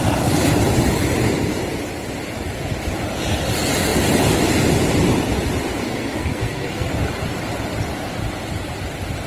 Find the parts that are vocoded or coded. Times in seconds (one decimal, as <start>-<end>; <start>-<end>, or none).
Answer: 5.8-6.9